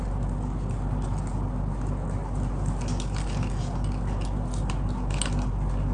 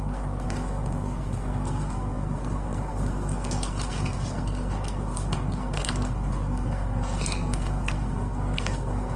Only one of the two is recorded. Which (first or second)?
first